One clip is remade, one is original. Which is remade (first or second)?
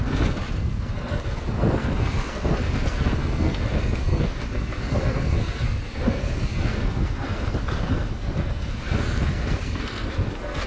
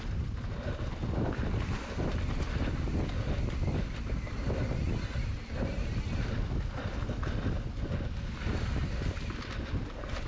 first